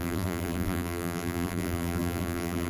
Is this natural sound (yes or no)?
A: no